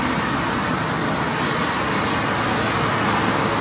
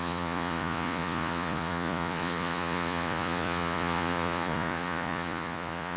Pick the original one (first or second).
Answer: first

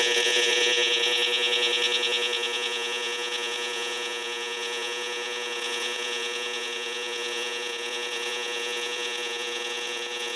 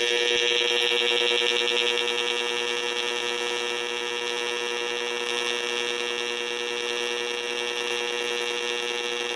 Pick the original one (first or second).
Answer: second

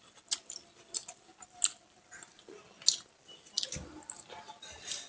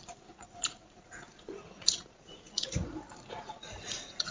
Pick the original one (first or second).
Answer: first